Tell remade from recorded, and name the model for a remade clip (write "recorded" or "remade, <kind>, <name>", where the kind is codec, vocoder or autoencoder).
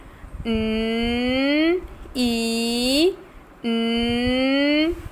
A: recorded